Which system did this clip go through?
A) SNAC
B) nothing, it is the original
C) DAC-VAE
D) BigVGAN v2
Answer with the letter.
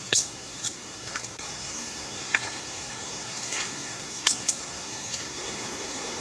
A